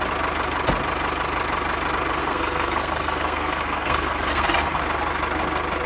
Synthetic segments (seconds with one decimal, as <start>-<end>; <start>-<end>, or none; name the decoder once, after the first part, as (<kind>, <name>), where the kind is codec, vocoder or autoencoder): 2.2-4.8 (codec, SNAC)